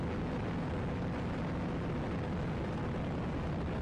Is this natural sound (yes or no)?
yes